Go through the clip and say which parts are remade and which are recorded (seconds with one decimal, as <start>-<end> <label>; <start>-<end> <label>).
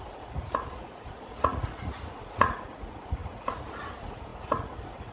0.0-5.1 remade